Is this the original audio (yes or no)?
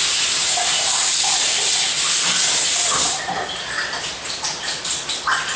yes